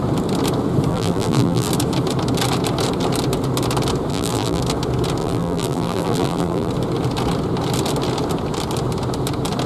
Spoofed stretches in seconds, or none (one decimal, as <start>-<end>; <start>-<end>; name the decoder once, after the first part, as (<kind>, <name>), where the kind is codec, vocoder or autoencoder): 0.9-1.7 (vocoder, BigVGAN v2); 4.1-4.6; 5.2-6.7